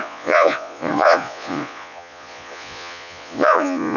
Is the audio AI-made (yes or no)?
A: yes